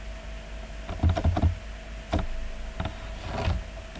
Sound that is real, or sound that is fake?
real